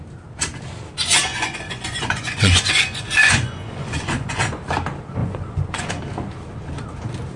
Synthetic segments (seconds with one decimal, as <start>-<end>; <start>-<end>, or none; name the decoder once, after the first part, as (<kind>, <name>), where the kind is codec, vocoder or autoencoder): 1.3-4.6 (vocoder, Vocos); 5.2-5.9